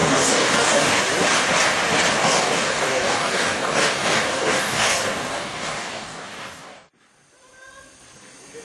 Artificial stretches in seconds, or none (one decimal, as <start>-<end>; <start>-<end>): 0.0-1.0; 2.2-6.9